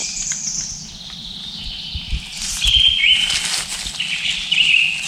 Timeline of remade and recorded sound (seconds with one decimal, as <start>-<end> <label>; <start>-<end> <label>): 0.0-1.6 remade; 1.6-5.1 recorded